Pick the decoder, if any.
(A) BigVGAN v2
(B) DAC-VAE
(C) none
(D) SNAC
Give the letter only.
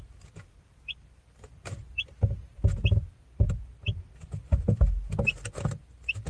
C